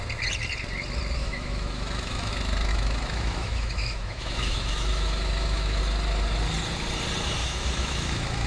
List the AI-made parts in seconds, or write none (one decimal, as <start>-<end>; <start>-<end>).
1.2-2.3; 2.7-5.8; 7.4-8.5